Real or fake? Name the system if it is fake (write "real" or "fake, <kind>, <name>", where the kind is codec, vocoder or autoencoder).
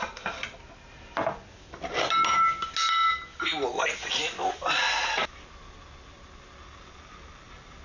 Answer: real